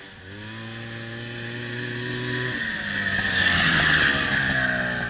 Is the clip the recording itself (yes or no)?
yes